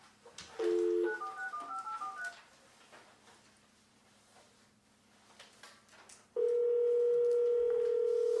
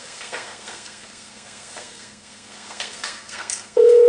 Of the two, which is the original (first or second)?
first